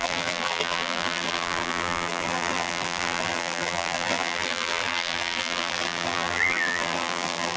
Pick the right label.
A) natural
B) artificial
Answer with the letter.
B